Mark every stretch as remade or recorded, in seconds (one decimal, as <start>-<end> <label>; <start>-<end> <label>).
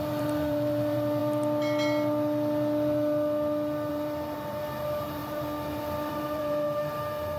0.0-1.2 remade; 1.2-3.9 recorded; 3.9-5.2 remade; 5.2-6.1 recorded; 6.1-7.4 remade